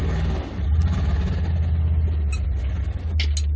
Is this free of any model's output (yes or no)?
yes